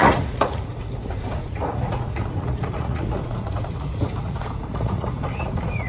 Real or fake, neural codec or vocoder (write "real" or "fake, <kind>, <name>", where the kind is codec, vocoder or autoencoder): fake, vocoder, Vocos